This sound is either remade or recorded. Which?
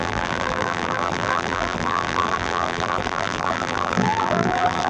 remade